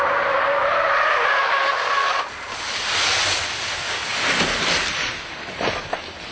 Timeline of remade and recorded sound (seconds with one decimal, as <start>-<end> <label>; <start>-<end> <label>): 0.0-6.3 recorded